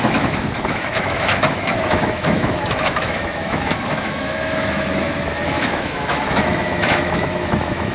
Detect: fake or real fake